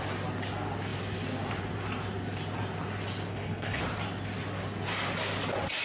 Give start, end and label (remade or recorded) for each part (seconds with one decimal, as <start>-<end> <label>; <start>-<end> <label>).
0.0-3.3 recorded; 3.3-3.8 remade; 3.8-5.8 recorded